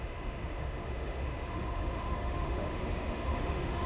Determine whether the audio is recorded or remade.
remade